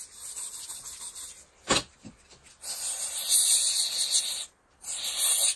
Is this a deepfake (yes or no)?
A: no